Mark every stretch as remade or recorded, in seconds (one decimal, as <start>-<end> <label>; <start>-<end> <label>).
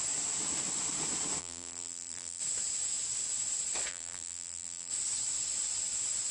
0.0-1.4 recorded; 1.4-2.4 remade; 2.4-3.9 recorded; 3.9-4.9 remade; 4.9-6.3 recorded